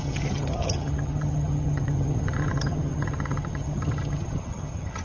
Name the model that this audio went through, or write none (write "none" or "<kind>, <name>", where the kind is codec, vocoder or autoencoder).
vocoder, HiFi-GAN